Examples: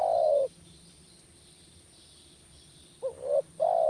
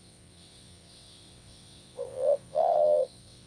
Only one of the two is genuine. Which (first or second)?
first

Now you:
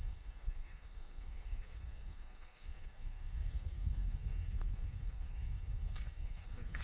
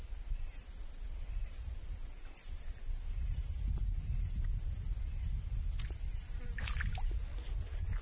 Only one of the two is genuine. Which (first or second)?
second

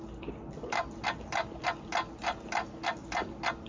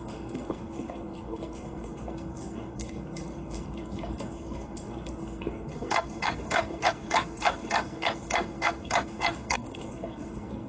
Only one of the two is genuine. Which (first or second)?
first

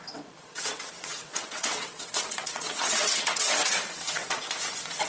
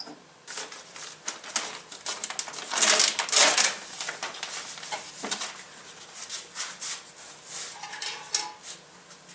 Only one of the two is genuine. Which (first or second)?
second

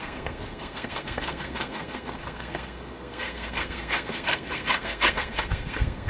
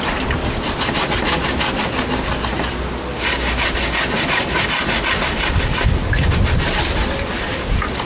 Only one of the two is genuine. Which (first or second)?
second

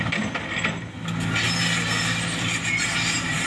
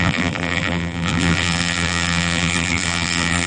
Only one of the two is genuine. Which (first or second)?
first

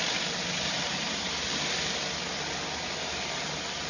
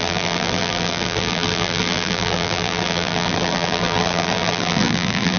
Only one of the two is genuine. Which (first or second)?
first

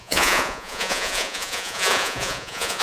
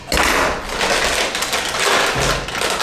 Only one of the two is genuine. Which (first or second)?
second